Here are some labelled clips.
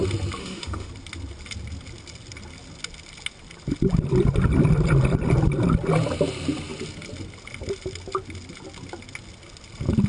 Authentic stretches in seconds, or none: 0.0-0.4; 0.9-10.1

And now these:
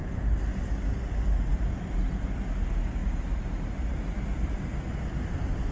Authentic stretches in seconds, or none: 0.0-5.7

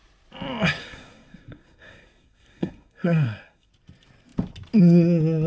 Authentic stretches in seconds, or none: 0.0-0.8; 3.7-5.5

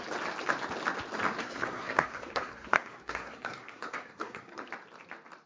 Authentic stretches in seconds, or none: 0.0-1.4; 4.7-5.5

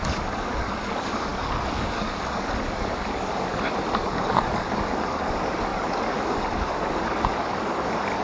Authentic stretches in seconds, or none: 3.5-4.0